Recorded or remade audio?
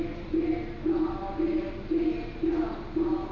recorded